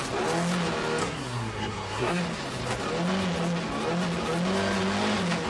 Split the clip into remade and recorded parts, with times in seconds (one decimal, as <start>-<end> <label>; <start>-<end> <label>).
0.0-1.0 recorded; 1.0-2.2 remade; 2.2-5.5 recorded